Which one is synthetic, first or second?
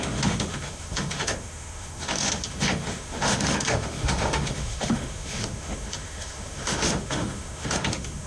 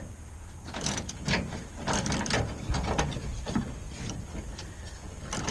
first